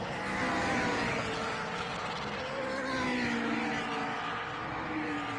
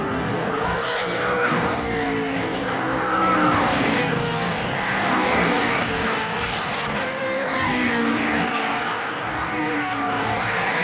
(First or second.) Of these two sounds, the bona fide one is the first